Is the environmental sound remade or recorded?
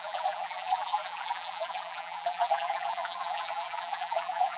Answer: remade